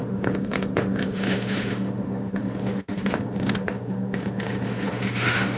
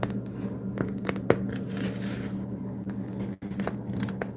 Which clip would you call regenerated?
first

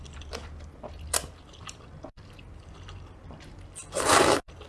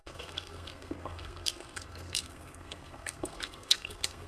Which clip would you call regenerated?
second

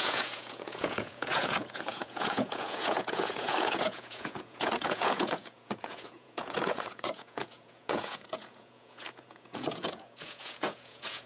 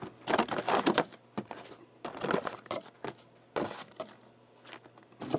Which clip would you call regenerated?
first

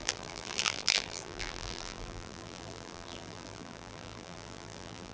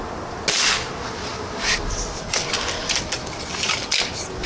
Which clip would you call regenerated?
first